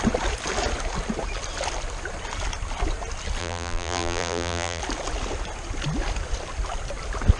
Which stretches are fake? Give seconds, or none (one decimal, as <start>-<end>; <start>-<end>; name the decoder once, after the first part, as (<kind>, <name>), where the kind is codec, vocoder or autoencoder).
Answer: 3.4-4.8 (vocoder, BigVGAN v2)